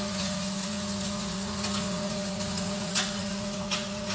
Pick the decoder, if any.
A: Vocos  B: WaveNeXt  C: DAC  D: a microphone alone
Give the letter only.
A